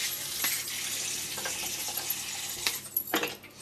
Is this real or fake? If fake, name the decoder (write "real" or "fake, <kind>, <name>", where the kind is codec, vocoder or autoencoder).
real